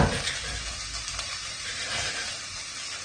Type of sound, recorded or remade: recorded